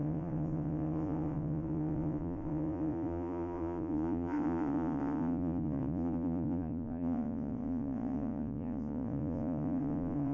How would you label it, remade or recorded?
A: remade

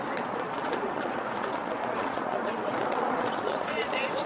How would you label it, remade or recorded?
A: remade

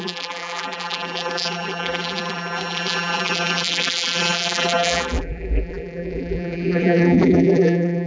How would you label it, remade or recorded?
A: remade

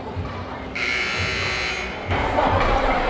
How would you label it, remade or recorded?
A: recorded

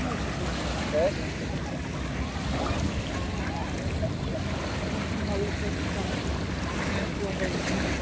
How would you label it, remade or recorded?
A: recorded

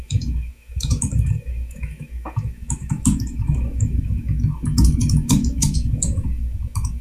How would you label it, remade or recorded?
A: remade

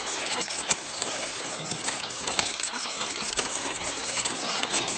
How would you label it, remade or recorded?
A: remade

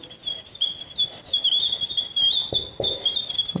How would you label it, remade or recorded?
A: recorded